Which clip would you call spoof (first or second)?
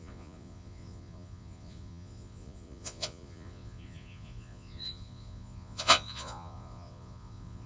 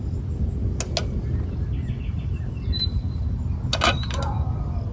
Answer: first